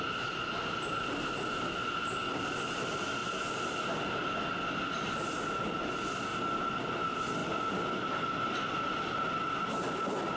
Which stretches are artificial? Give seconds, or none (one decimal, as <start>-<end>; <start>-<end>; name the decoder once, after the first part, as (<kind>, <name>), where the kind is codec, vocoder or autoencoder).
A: 7.4-8.6 (vocoder, BigVGAN v2)